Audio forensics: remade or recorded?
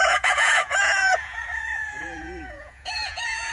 remade